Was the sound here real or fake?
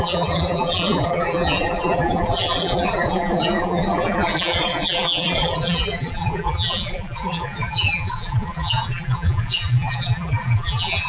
fake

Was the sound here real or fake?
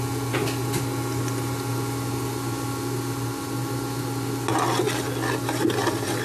real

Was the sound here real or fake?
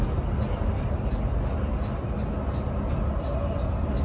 real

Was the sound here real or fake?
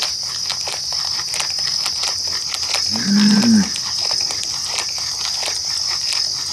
real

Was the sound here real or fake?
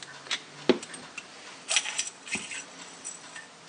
real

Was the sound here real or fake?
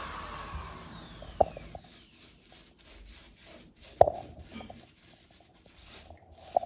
fake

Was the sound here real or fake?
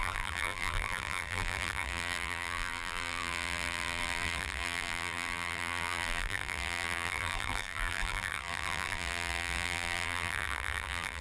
fake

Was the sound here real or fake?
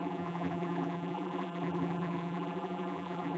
fake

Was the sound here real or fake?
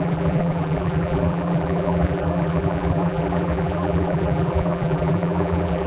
fake